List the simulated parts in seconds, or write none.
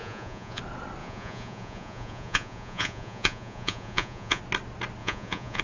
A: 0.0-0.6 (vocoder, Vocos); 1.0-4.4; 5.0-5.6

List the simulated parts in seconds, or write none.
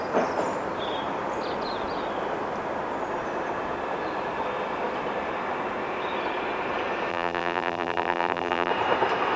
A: 7.1-8.7 (vocoder, BigVGAN v2)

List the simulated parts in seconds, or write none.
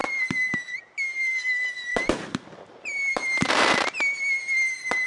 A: 0.0-0.8 (vocoder, BigVGAN v2); 1.9-4.2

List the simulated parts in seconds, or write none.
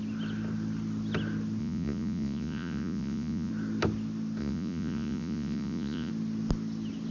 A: 1.6-3.5 (vocoder, Vocos); 4.4-6.1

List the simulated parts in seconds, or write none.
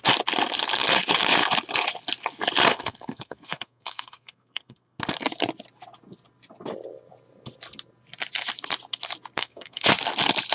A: 2.7-5.0 (codec, SNAC); 9.4-9.9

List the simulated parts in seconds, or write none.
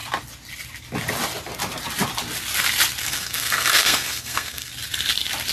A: 3.0-4.7 (codec, SNAC)